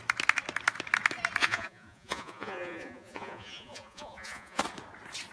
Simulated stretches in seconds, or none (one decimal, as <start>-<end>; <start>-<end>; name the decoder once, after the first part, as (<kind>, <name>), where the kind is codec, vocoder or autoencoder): 1.4-4.6 (vocoder, Vocos)